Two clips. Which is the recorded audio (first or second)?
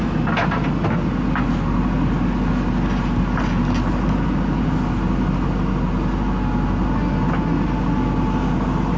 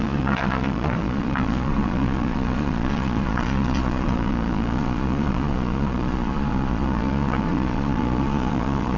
first